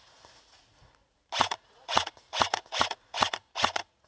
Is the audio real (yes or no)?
no